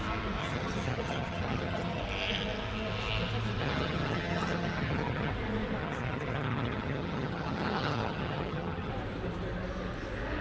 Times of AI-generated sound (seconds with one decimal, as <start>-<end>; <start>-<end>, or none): 0.4-2.0; 3.6-5.3; 5.8-8.9